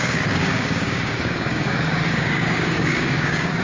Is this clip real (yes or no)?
no